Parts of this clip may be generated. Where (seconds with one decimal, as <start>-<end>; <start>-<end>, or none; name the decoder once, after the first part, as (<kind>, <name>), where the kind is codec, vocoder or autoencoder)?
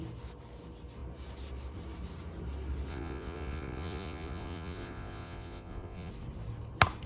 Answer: 2.9-6.1 (vocoder, Vocos)